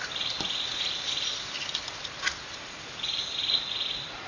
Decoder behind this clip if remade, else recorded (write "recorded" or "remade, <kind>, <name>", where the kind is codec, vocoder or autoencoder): recorded